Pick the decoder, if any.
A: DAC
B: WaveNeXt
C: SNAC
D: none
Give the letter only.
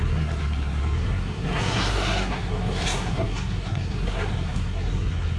C